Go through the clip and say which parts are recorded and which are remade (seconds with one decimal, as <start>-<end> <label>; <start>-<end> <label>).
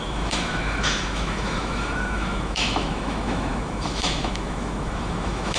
0.0-5.6 remade